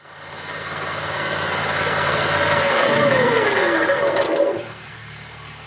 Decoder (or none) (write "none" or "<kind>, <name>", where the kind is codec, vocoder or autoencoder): codec, SNAC